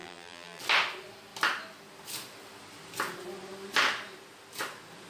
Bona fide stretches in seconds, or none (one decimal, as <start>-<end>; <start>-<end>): 0.6-5.1